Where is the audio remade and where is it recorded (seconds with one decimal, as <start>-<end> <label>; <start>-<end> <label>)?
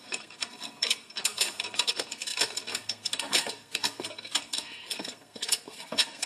0.0-6.3 remade